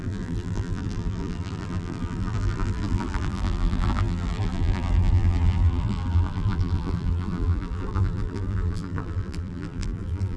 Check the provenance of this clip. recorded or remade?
remade